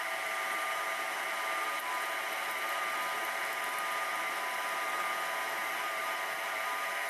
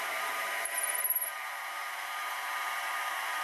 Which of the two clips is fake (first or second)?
second